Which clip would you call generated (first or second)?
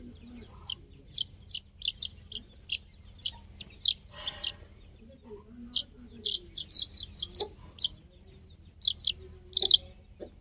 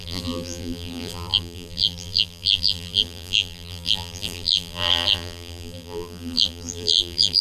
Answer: second